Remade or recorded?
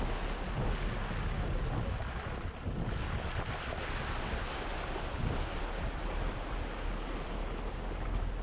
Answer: recorded